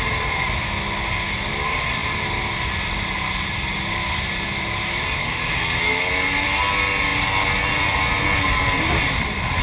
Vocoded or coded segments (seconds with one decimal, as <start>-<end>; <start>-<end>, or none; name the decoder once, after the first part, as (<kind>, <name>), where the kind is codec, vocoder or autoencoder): 5.2-6.1 (codec, DAC)